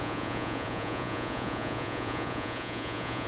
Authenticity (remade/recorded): remade